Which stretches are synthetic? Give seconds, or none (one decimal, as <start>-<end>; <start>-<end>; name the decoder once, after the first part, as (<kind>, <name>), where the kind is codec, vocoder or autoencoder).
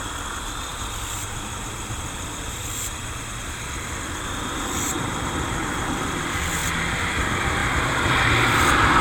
0.0-9.0 (vocoder, BigVGAN v2)